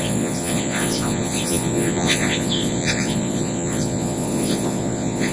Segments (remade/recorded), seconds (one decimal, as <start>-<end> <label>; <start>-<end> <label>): 0.0-5.3 remade